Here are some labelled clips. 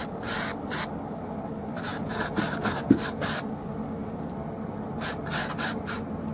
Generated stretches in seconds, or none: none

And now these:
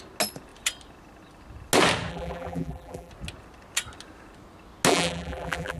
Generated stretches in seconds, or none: 2.1-3.1 (vocoder, BigVGAN v2); 4.9-5.8

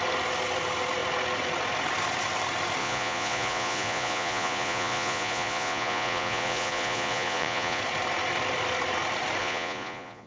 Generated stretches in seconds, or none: 2.8-7.8 (vocoder, Vocos); 9.4-10.3

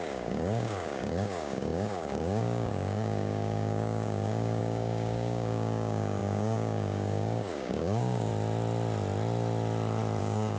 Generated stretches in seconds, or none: 0.0-8.3 (codec, DAC); 10.2-10.6